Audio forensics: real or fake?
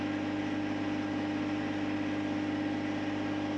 real